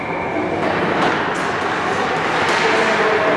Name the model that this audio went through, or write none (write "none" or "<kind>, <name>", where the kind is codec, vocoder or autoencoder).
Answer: none